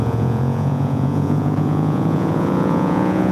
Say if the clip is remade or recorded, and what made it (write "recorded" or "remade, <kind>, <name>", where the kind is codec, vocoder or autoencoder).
remade, vocoder, Vocos